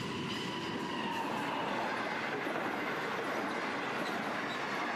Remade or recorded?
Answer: recorded